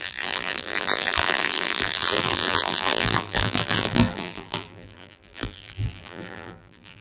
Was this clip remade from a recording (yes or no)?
yes